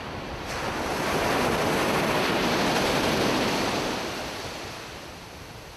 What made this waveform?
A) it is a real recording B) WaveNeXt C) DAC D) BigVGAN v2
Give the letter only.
A